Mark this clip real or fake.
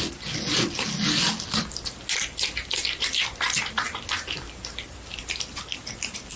real